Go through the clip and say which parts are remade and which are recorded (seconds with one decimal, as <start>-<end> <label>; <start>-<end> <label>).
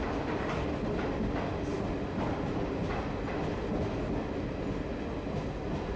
0.0-6.0 recorded